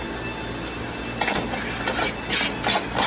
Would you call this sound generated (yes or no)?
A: no